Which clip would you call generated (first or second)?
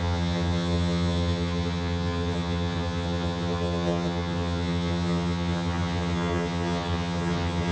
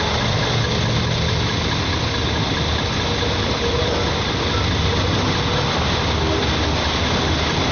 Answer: first